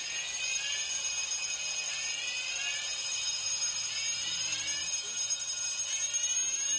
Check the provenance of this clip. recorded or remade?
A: recorded